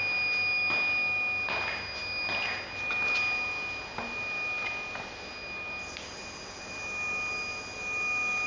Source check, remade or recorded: recorded